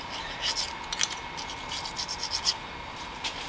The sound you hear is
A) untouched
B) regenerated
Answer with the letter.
A